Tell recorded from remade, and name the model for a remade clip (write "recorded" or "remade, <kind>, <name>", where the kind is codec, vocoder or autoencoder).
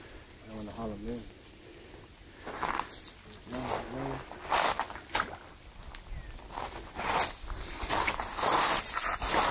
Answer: recorded